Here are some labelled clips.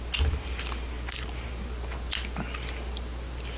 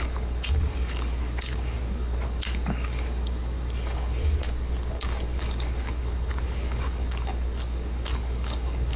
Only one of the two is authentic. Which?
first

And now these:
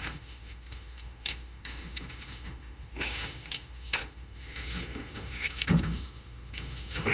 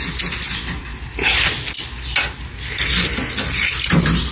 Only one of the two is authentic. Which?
second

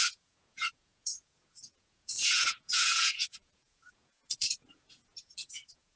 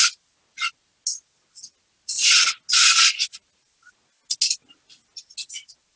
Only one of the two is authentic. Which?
second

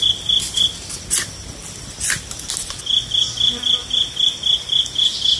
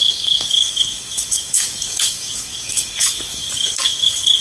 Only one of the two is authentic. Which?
first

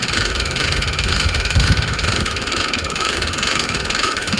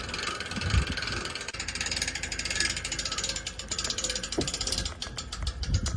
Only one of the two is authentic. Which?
second